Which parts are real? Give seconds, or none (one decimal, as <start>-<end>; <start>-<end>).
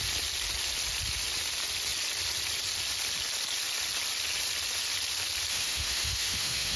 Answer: 0.0-5.5